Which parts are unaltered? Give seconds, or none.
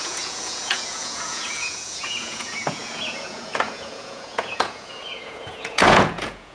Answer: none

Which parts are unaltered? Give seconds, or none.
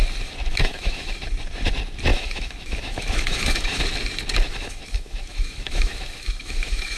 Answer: 0.0-0.5; 1.2-2.1; 3.8-4.5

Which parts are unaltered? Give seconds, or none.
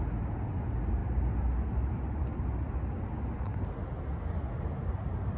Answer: 0.0-5.4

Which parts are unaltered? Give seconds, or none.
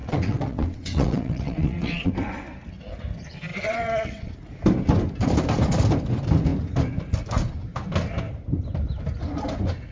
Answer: 2.1-3.5; 4.3-9.9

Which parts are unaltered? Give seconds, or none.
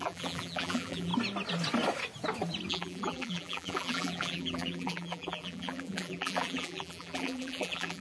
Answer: 1.1-2.7